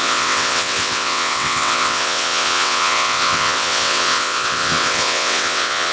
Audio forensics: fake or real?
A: fake